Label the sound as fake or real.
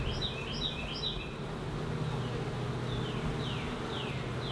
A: real